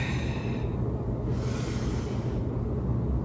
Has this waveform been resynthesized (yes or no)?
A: no